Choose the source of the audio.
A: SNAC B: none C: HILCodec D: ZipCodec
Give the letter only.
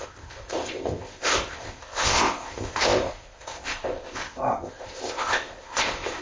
D